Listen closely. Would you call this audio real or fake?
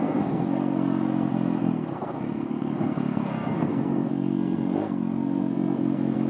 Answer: fake